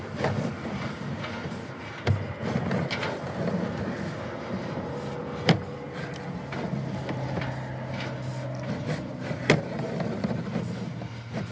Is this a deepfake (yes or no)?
no